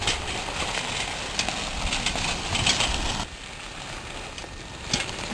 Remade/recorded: recorded